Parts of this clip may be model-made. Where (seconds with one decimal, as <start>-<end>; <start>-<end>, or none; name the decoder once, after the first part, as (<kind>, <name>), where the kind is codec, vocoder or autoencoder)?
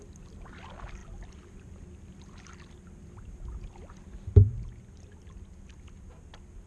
none